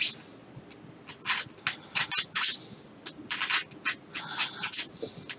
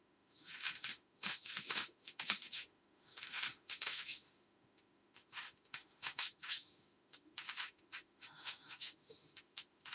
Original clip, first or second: first